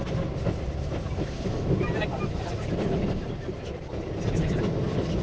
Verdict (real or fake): real